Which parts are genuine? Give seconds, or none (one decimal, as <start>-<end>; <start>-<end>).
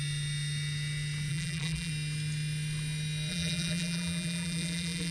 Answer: 0.0-1.3; 1.9-3.3